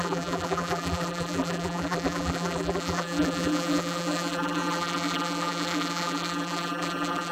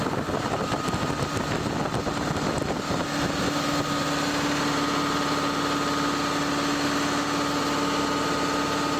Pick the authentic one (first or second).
second